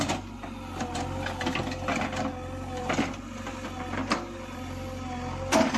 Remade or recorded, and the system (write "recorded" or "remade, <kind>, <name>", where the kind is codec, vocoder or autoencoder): recorded